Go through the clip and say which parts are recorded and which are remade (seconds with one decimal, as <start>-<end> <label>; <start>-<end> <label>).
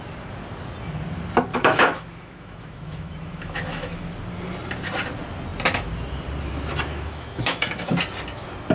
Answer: 0.0-1.5 recorded; 1.5-4.1 remade; 4.1-6.9 recorded; 6.9-7.9 remade; 7.9-8.7 recorded